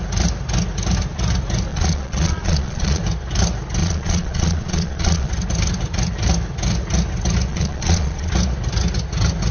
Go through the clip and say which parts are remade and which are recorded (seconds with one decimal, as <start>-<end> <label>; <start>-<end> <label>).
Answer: 0.0-1.7 recorded; 1.7-3.0 remade; 3.0-3.8 recorded; 3.8-5.3 remade; 5.3-7.5 recorded; 7.5-8.3 remade; 8.3-9.5 recorded